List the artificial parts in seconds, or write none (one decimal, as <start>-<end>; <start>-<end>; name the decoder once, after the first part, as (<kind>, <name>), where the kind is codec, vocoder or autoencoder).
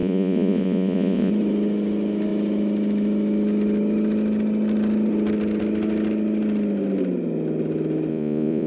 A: 0.0-1.3 (vocoder, Vocos); 8.1-8.7